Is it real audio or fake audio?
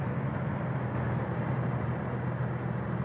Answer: real